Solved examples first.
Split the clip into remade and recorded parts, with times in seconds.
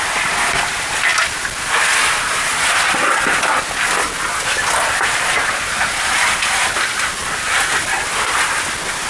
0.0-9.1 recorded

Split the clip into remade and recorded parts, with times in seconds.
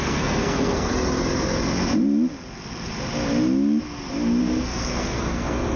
0.0-0.9 remade; 0.9-4.4 recorded; 4.4-5.8 remade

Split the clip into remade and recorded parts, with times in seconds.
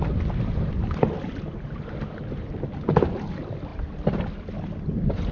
0.0-5.3 recorded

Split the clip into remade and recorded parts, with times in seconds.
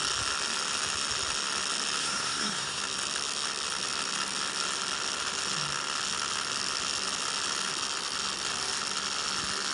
0.0-2.0 recorded; 2.0-2.8 remade; 2.8-9.7 recorded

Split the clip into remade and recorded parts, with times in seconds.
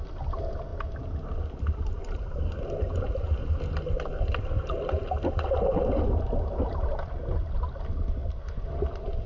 0.0-9.3 recorded